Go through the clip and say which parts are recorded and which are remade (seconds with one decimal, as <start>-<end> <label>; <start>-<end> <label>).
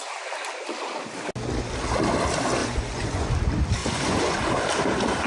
0.0-2.6 recorded; 2.6-3.3 remade; 3.3-3.8 recorded; 3.8-4.6 remade; 4.6-5.3 recorded